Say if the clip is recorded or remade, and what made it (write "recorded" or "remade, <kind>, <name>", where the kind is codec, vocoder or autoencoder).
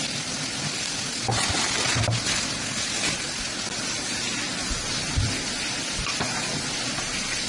recorded